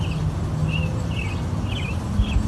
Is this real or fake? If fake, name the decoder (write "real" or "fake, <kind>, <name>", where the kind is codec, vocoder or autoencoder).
real